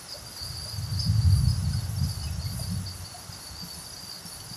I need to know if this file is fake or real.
real